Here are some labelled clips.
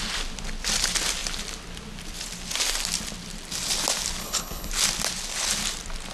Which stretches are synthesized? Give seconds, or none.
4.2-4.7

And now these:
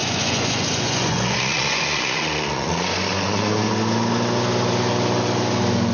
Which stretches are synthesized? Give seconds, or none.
0.0-2.7; 3.1-3.7

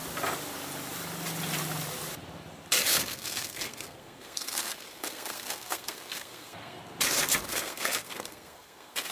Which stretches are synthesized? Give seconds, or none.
2.9-6.8; 7.5-9.1

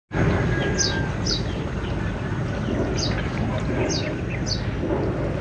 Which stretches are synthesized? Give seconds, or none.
none

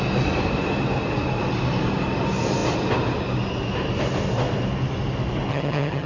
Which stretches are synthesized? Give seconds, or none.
5.5-6.1

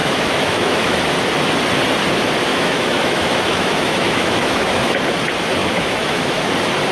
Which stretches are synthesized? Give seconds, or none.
0.0-1.0; 2.5-5.0; 5.6-6.5

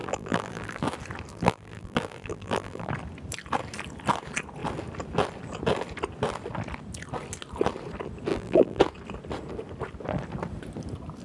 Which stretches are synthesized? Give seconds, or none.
0.0-0.8; 1.3-2.9; 8.3-8.8